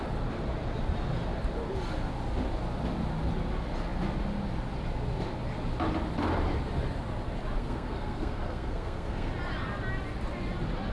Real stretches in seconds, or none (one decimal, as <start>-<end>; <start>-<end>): 0.0-7.6; 9.3-10.9